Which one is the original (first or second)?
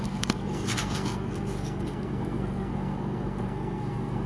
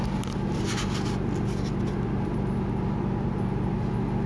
second